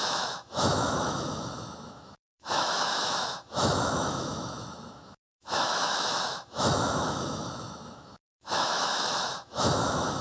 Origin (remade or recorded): remade